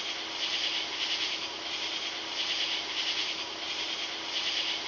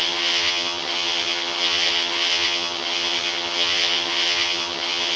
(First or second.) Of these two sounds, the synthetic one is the second